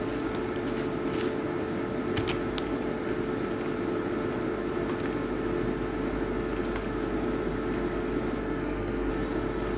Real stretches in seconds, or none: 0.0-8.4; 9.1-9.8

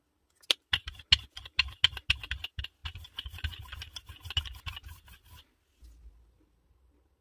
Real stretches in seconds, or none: 0.0-7.2

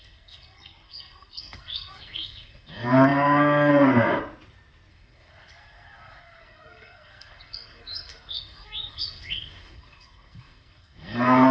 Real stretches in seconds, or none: 4.2-4.9

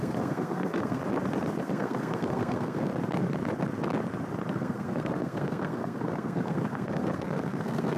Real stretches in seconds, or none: 1.0-1.6; 2.9-4.5

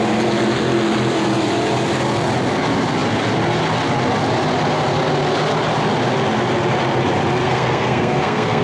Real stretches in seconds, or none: 0.0-7.4